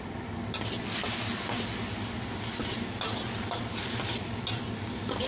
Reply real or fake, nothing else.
real